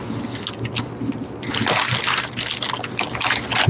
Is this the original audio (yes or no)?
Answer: yes